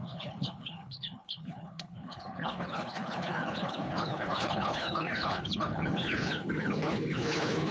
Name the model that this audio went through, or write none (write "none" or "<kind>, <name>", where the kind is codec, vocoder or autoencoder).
codec, HILCodec